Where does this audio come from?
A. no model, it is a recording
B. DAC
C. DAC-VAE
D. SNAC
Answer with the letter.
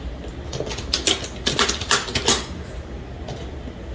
A